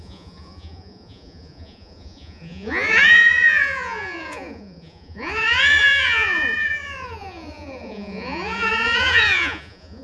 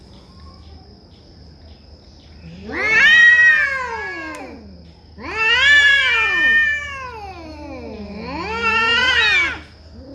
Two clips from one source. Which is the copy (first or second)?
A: first